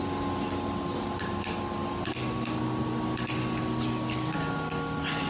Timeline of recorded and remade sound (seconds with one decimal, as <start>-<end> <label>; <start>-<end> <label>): 0.0-5.3 recorded